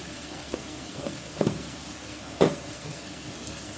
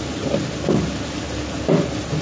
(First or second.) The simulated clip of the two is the first